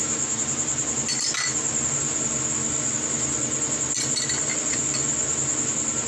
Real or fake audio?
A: real